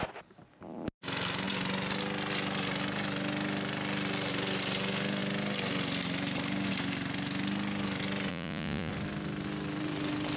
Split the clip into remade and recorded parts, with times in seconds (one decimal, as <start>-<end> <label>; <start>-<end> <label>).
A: 0.0-8.3 recorded; 8.3-8.9 remade; 8.9-10.4 recorded